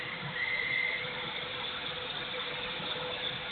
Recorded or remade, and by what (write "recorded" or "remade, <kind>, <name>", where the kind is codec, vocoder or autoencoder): remade, vocoder, BigVGAN v2